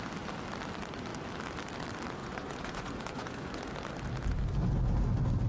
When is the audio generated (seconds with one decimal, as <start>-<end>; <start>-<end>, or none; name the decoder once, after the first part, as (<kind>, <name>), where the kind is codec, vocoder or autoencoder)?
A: 2.2-3.6 (vocoder, Vocos)